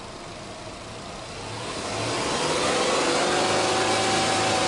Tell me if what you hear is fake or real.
real